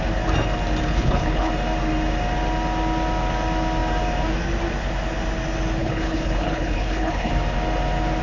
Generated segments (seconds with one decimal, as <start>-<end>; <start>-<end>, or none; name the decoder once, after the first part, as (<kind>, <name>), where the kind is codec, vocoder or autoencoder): 0.9-1.5 (codec, HILCodec); 5.8-7.3